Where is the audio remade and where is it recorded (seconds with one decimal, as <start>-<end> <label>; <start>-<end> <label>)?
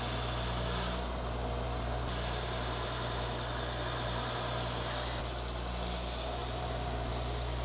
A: 0.0-6.4 recorded; 6.4-7.1 remade; 7.1-7.6 recorded